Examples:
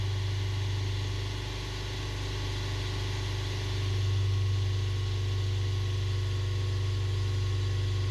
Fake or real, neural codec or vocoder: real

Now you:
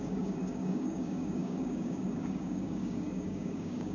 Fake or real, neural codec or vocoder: fake, codec, DAC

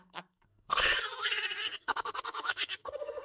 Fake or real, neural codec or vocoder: fake, codec, SNAC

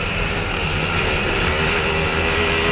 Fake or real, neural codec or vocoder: real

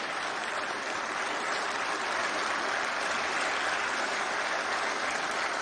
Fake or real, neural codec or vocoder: real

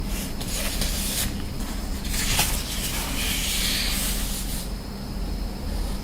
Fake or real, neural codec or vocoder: real